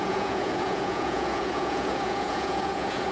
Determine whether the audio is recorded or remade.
remade